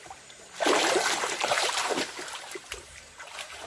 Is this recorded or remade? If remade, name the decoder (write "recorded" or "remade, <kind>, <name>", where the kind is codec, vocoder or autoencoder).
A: remade, vocoder, BigVGAN v2